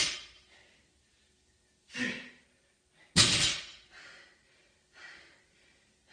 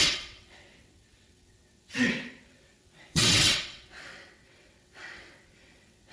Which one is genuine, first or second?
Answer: first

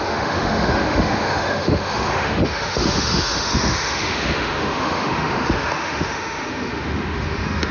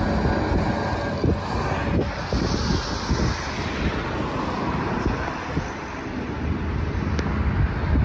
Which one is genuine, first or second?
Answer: second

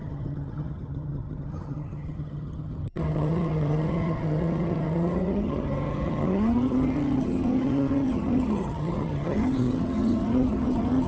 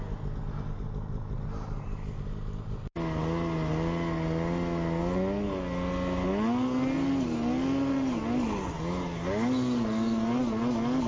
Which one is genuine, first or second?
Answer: second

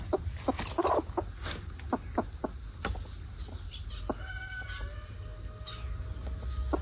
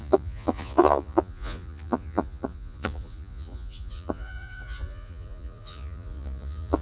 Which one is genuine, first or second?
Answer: first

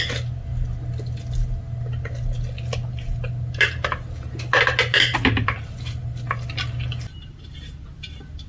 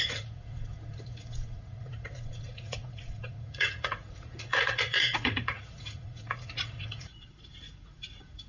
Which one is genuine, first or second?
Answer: first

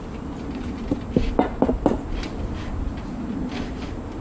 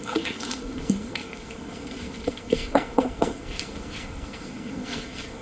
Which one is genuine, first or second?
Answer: first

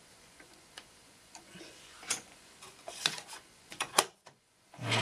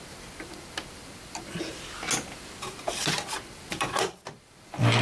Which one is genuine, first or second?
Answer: second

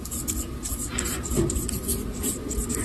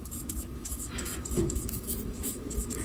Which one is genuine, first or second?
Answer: first